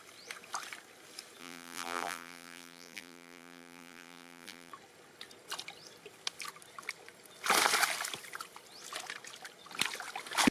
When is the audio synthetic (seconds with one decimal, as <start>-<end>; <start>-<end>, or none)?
1.4-4.7